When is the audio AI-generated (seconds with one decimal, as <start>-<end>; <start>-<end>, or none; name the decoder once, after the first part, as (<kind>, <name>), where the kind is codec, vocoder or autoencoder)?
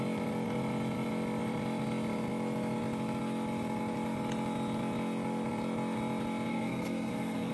6.5-7.5 (codec, SNAC)